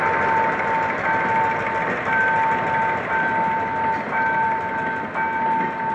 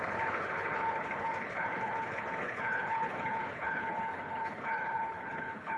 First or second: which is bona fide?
first